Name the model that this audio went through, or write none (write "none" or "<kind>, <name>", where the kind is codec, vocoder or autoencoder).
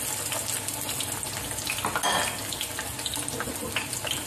none